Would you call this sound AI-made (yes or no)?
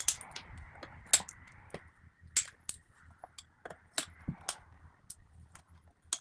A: no